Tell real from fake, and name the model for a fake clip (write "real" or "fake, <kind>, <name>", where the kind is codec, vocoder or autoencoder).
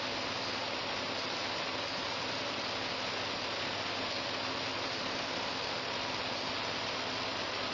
real